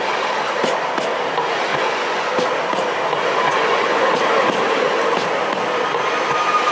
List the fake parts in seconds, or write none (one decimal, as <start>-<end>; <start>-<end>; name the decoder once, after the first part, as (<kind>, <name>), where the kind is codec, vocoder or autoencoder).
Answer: 1.7-2.3 (vocoder, Vocos); 3.4-4.1